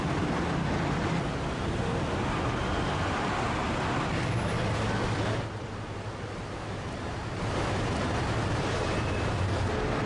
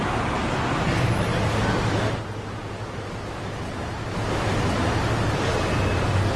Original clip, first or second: second